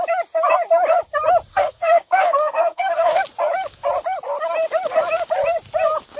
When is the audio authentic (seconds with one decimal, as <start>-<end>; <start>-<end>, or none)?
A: 0.0-1.5; 3.2-6.2